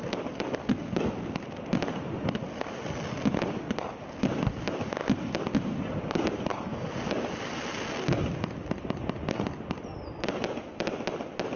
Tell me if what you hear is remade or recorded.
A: recorded